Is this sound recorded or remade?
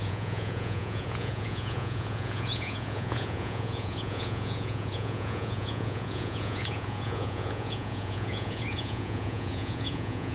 remade